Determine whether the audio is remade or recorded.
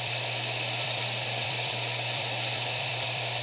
remade